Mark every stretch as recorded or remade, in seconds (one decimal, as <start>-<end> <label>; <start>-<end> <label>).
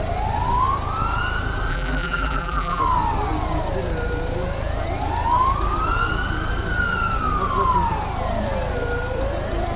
0.0-1.7 recorded; 1.7-2.8 remade; 2.8-9.8 recorded